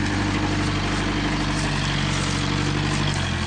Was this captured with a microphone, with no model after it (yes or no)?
yes